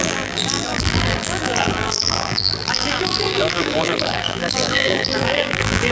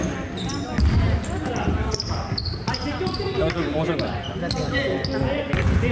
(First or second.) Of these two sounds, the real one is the second